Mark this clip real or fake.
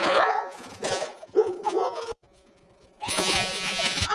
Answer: fake